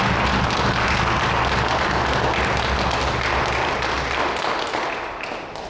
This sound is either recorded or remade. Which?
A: recorded